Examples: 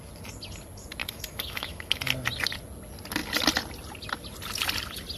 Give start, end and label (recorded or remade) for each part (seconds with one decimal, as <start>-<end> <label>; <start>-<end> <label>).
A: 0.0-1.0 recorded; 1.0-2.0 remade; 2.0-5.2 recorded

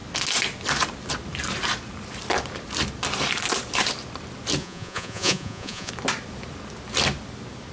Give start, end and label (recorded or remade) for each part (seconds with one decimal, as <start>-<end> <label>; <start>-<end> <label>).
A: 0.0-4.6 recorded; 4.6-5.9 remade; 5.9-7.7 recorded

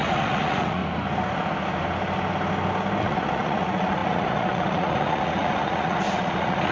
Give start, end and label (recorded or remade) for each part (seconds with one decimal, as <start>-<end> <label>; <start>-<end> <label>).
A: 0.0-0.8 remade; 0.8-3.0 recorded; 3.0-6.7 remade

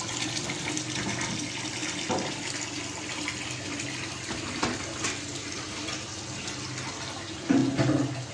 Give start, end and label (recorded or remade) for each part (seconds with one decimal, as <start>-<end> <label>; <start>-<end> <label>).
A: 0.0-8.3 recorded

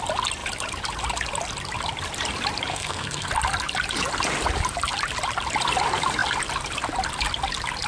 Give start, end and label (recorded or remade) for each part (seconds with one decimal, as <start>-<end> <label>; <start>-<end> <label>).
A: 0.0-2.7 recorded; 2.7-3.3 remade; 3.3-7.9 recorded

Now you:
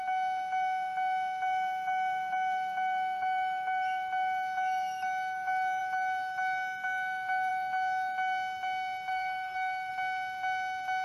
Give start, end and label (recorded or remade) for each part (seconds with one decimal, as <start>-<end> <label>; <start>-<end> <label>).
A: 0.0-9.1 recorded; 9.1-9.9 remade; 9.9-11.0 recorded

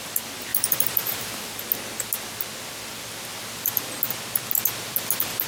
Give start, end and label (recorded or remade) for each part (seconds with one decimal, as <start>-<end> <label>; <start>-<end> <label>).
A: 0.0-0.5 recorded; 0.5-1.6 remade; 1.6-5.5 recorded

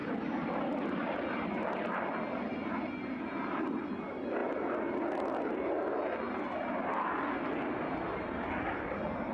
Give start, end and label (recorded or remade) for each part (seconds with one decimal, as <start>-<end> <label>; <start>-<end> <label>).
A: 0.0-9.3 recorded